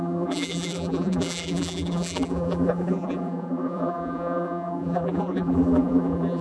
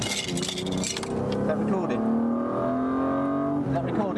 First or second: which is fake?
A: first